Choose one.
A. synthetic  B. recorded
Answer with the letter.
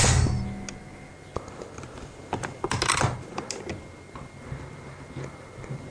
B